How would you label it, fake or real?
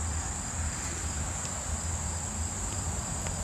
real